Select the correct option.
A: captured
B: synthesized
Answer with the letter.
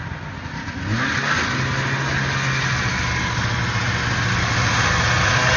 A